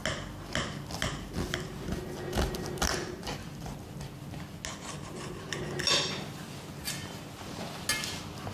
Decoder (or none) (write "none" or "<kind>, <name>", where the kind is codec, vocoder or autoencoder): none